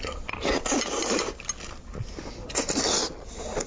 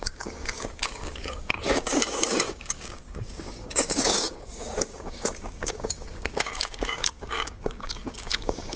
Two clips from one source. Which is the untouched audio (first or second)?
first